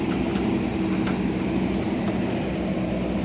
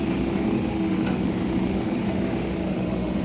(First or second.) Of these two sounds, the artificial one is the second